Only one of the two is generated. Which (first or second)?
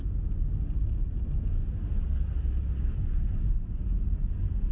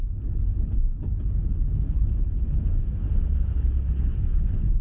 second